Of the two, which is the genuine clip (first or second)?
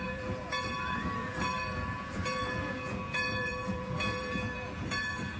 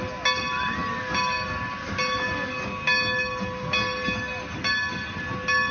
second